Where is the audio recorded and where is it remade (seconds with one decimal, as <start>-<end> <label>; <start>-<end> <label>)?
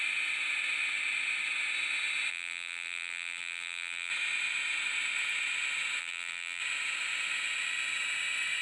0.0-2.3 recorded; 2.3-4.1 remade; 4.1-6.0 recorded; 6.0-6.6 remade; 6.6-8.6 recorded